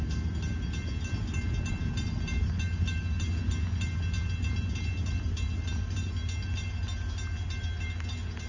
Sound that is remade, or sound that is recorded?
recorded